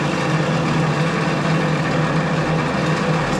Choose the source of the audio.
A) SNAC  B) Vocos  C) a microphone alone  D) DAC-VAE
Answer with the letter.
C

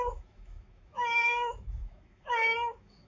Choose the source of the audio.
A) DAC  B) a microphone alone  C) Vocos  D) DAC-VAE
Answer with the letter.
D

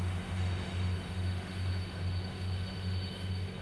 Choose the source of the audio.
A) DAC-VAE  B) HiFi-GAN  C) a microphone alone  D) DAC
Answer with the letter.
A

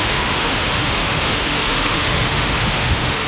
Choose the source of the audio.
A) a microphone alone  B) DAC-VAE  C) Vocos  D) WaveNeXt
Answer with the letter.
B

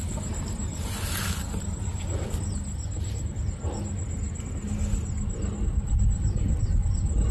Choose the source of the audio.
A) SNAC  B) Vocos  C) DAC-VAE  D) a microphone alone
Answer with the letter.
D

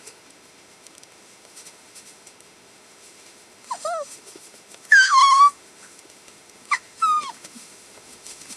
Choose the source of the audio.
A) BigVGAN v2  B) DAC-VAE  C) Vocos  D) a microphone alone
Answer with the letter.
B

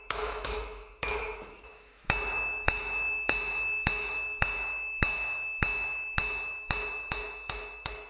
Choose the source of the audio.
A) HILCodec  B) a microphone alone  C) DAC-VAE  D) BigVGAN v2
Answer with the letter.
C